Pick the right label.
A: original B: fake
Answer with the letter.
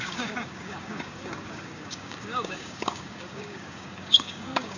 B